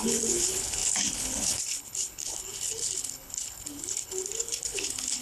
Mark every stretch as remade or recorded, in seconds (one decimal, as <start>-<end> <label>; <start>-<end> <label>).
0.0-5.2 remade